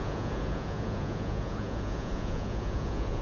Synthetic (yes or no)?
yes